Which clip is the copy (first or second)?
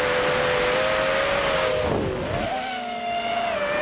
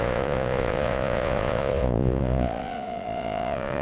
second